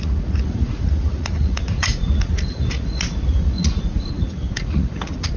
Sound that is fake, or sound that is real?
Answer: fake